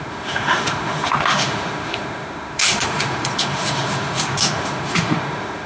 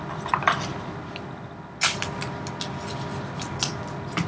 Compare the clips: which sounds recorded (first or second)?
second